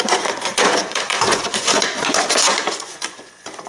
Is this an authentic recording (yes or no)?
no